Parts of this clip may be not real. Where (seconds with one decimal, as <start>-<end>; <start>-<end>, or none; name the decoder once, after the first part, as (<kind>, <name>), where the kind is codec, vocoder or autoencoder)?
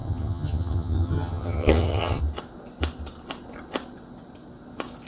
0.0-2.2 (vocoder, HiFi-GAN)